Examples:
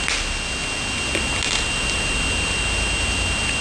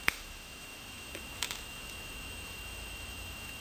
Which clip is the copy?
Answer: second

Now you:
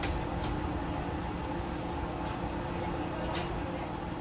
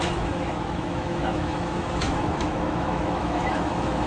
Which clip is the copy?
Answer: second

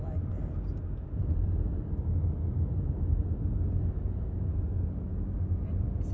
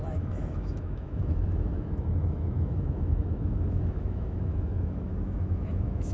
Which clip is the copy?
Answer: second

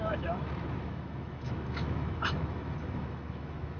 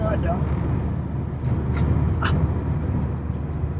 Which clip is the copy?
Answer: first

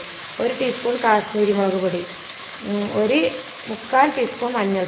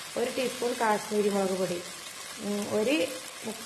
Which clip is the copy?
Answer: first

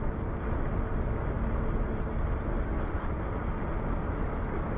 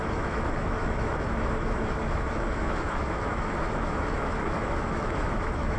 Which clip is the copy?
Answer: second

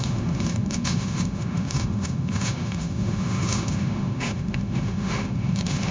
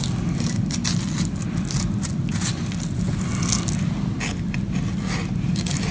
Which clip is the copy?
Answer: first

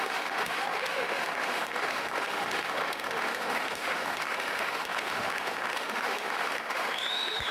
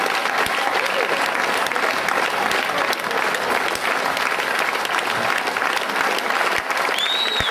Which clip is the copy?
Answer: first